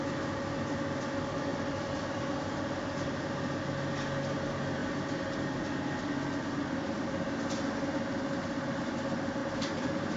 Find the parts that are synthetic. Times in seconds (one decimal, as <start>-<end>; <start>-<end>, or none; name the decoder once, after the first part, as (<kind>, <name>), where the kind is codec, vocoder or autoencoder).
1.5-3.2 (vocoder, BigVGAN v2); 4.8-5.6; 9.4-10.2